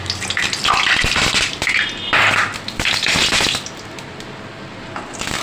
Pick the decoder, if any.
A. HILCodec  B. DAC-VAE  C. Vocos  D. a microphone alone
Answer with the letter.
D